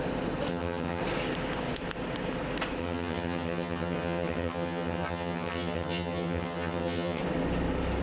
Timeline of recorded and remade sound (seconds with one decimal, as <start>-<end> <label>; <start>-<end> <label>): 0.0-0.5 recorded; 0.5-1.0 remade; 1.0-2.8 recorded; 2.8-7.2 remade; 7.2-8.0 recorded